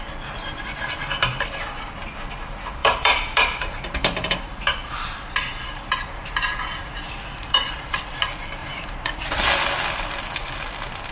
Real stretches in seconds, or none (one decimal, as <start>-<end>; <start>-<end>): 0.0-2.8; 5.3-7.4; 8.0-8.6; 9.4-11.1

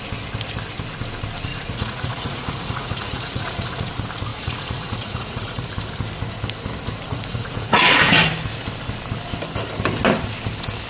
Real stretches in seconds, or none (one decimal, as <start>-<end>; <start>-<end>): 0.0-1.5; 3.9-4.3; 5.7-7.1; 8.3-10.9

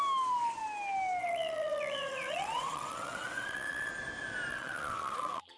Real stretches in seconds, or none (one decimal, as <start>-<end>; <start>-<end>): 0.0-1.2; 3.9-4.5

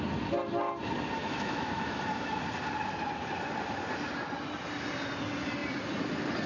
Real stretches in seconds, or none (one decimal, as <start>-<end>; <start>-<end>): 0.0-1.2; 2.4-6.5

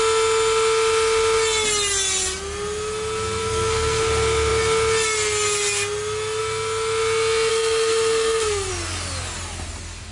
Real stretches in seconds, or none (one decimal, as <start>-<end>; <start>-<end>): 0.0-3.4; 4.0-7.5; 8.7-10.1

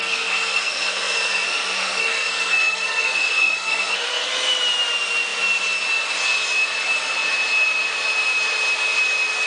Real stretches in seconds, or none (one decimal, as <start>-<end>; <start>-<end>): 4.3-9.5

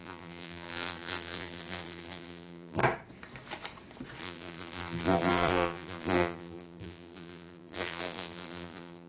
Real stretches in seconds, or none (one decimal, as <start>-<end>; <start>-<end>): 2.8-4.2